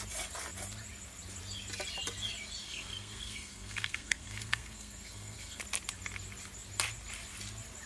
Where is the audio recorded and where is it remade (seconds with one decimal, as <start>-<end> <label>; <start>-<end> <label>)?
0.0-2.6 recorded; 2.6-5.6 remade; 5.6-7.9 recorded